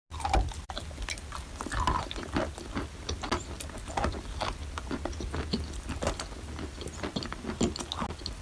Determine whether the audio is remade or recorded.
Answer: recorded